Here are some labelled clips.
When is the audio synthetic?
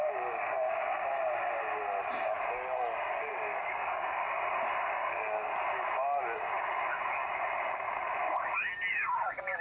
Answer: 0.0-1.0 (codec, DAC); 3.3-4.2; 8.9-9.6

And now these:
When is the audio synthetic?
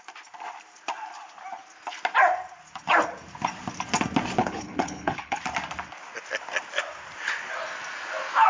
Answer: 4.4-5.4 (codec, HILCodec)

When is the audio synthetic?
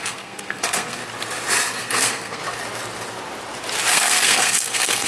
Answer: 0.0-1.0 (codec, SNAC); 1.8-2.4; 3.9-5.1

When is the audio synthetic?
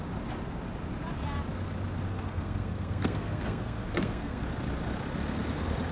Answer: 2.1-4.4 (codec, SNAC)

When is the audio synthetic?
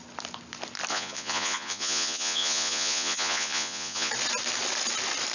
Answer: 0.9-4.1 (vocoder, Vocos)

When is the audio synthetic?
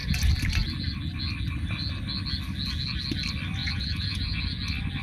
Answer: 3.6-4.4 (vocoder, Vocos)